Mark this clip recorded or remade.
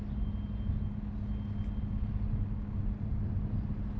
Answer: recorded